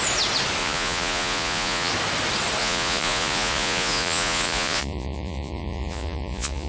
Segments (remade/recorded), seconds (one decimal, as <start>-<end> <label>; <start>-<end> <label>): 0.0-0.6 recorded; 0.6-1.9 remade; 1.9-2.6 recorded; 2.6-6.7 remade